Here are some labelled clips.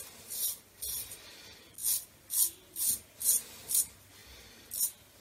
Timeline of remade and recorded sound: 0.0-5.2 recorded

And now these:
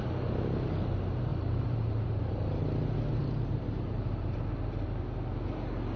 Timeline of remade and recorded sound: 0.0-1.3 recorded; 1.3-2.6 remade; 2.6-3.2 recorded; 3.2-4.4 remade; 4.4-6.0 recorded

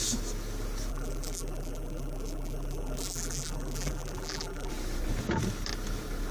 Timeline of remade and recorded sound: 0.0-0.9 recorded; 0.9-4.7 remade; 4.7-6.3 recorded

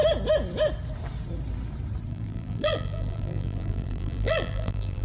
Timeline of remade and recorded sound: 0.0-2.1 recorded; 2.1-5.0 remade

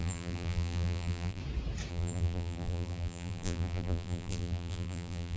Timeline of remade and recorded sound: 0.0-1.4 remade; 1.4-1.9 recorded; 1.9-5.4 remade

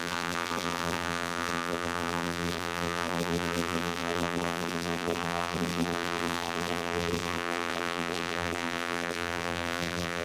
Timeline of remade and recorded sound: 0.0-10.2 remade

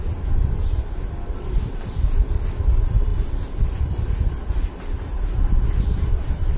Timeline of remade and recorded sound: 0.0-3.1 remade; 3.1-4.3 recorded; 4.3-6.6 remade